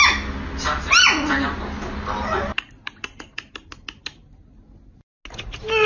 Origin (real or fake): real